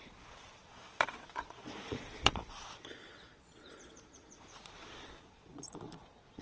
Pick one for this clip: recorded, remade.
remade